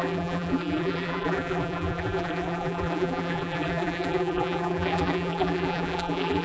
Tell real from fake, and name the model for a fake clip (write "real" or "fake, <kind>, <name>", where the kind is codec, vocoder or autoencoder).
fake, vocoder, BigVGAN v2